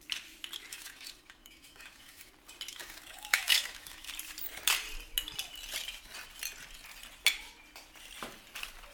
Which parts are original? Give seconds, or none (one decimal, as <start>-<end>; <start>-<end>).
0.0-0.7; 2.3-2.7; 4.1-8.9